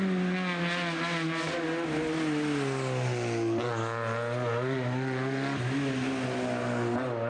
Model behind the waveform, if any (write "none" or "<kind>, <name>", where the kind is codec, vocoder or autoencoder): none